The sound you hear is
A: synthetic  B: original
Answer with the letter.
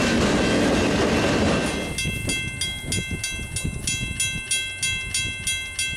B